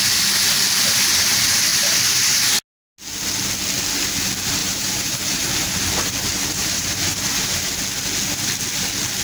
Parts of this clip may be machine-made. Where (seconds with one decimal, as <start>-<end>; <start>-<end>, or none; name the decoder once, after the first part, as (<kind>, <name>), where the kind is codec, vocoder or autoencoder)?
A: 4.6-5.8 (vocoder, BigVGAN v2); 6.6-7.7

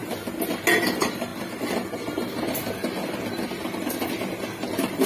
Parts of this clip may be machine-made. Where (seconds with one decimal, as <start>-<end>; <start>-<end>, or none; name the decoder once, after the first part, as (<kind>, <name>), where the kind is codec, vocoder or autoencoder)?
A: none

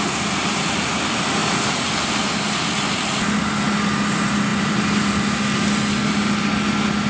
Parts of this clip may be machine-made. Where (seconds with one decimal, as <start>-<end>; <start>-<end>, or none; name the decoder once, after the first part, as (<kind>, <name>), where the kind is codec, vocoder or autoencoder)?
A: 4.5-5.1 (vocoder, BigVGAN v2)

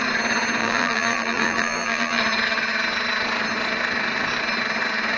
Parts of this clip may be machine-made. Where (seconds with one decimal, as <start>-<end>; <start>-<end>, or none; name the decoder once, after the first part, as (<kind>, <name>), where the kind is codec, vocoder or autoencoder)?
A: 0.6-2.2 (vocoder, BigVGAN v2)

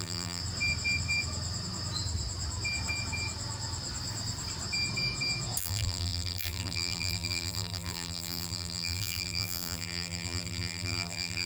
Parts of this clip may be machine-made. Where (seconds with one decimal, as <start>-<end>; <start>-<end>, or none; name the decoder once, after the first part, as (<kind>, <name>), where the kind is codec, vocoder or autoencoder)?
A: 0.0-0.4 (vocoder, BigVGAN v2); 5.6-11.5

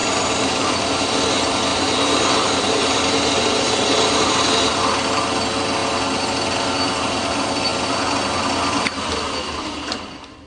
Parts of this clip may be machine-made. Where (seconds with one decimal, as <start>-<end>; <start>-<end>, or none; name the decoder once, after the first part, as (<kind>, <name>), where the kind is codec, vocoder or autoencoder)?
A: 0.0-0.8 (vocoder, BigVGAN v2); 1.7-5.2

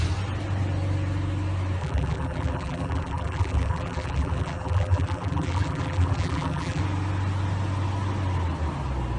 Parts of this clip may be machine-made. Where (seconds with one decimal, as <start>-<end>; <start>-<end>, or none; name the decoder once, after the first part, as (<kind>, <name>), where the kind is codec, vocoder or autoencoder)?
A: 1.8-6.8 (vocoder, BigVGAN v2)